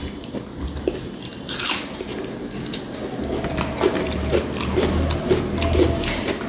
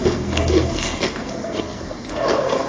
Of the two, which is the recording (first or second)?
first